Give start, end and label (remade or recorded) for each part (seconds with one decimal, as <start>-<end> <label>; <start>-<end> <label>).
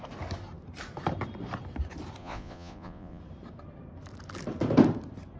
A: 0.0-2.2 recorded; 2.2-3.2 remade; 3.2-5.4 recorded